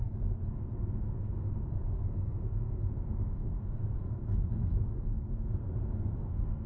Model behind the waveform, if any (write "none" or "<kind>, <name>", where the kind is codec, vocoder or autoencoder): codec, SNAC